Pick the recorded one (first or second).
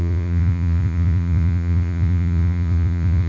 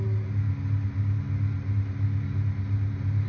second